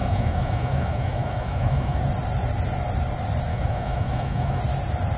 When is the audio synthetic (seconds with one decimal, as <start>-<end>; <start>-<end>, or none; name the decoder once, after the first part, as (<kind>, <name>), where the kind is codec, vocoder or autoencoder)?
0.0-2.0 (autoencoder, DAC-VAE); 3.5-4.6